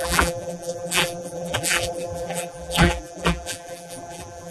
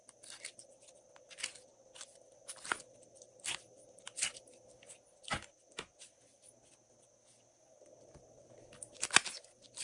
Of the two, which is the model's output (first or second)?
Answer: first